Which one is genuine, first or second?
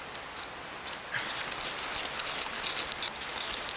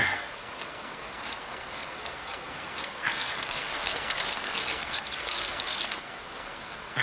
first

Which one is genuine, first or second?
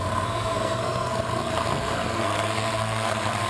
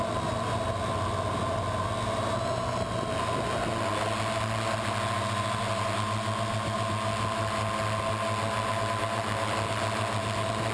second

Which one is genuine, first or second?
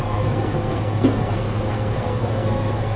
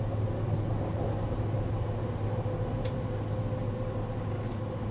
second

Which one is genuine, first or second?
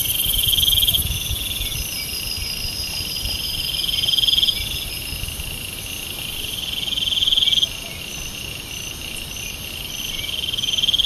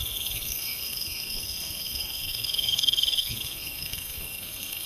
first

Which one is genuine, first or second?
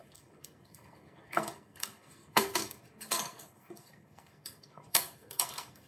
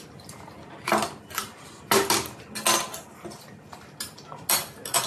second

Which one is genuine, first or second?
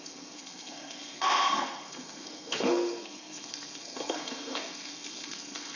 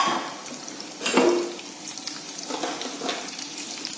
second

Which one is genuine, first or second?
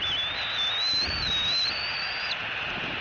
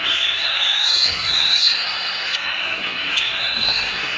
first